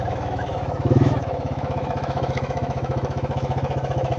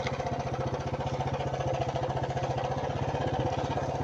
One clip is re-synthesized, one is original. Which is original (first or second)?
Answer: second